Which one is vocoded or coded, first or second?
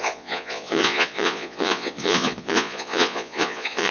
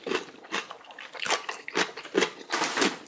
first